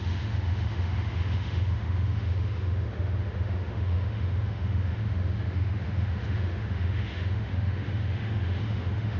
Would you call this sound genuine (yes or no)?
no